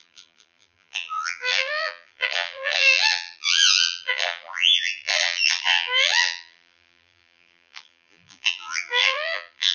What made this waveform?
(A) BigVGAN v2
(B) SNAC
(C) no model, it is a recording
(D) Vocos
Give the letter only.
A